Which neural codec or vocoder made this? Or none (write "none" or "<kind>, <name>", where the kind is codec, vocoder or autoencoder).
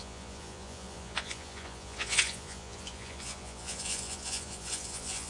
vocoder, Vocos